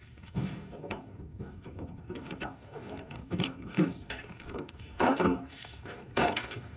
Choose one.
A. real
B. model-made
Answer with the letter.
B